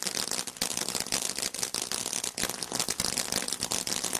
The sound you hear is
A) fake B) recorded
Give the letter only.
B